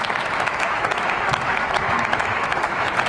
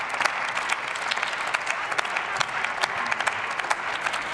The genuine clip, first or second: second